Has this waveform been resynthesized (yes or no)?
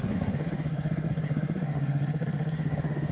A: yes